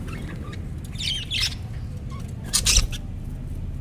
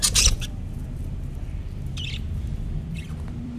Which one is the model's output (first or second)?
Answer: second